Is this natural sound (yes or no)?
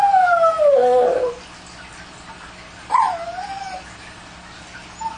yes